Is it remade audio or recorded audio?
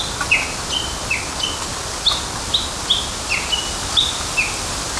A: recorded